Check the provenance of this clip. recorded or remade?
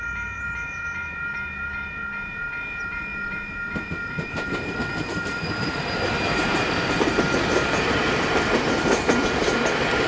remade